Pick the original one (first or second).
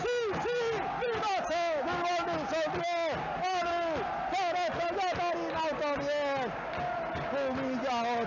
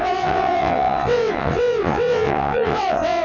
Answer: first